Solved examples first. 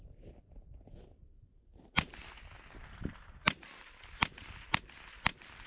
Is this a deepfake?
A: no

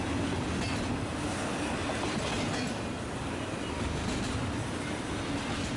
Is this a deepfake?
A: no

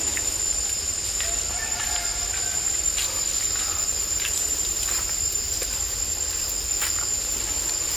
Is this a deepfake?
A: no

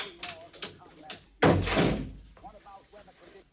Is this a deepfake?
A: no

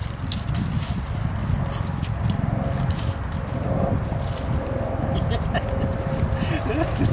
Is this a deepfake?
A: no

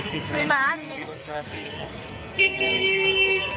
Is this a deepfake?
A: yes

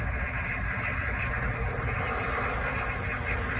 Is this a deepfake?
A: no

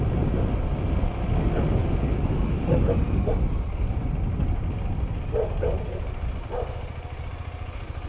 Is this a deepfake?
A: no